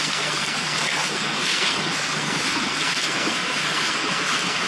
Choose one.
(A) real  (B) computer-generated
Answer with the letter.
B